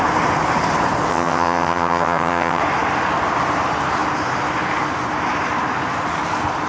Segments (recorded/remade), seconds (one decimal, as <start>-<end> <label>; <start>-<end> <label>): 0.0-1.1 recorded; 1.1-2.6 remade; 2.6-6.7 recorded